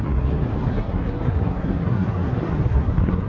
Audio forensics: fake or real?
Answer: fake